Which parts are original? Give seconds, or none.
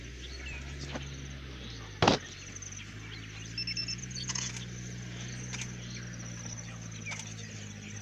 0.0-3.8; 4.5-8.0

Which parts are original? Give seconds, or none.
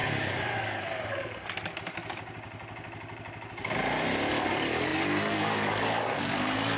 1.7-4.3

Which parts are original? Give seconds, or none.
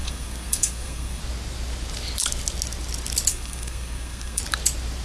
1.2-3.3; 4.4-5.0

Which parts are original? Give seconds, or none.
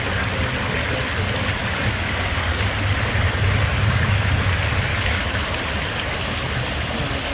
0.0-1.6; 2.7-3.7; 4.3-4.9; 5.5-7.3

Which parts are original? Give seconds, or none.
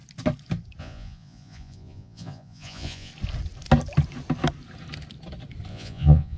0.0-0.8; 3.1-5.7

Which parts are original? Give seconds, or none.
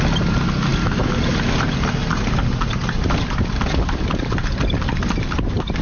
0.0-2.0; 4.2-5.8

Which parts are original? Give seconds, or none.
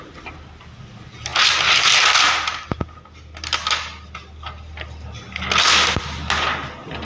0.0-7.0